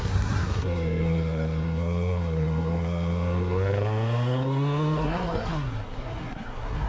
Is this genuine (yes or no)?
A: no